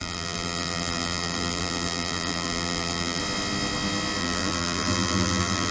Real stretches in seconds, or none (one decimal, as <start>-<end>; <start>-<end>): 3.2-4.2